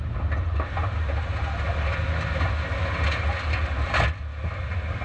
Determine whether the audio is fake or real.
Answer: real